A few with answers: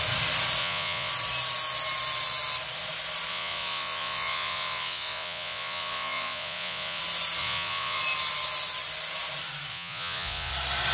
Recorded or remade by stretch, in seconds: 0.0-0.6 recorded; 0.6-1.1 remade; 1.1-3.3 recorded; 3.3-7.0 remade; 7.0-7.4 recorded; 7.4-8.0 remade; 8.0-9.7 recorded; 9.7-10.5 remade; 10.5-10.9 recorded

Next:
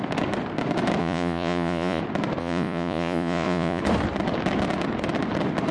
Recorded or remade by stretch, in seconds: 0.0-1.0 recorded; 1.0-2.0 remade; 2.0-2.4 recorded; 2.4-3.8 remade; 3.8-5.7 recorded